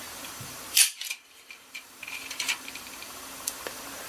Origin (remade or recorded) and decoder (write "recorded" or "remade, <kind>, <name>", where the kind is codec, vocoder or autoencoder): remade, vocoder, BigVGAN v2